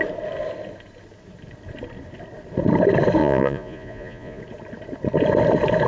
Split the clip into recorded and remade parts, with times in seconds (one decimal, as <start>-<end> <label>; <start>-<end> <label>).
0.0-3.2 recorded; 3.2-4.4 remade; 4.4-5.9 recorded